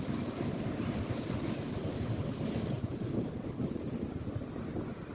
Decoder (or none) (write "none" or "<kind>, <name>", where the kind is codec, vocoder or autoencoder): none